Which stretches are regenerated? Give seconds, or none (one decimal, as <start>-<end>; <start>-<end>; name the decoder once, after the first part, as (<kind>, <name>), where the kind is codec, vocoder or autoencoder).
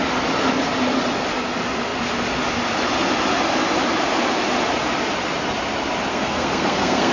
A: 6.1-7.1 (codec, SNAC)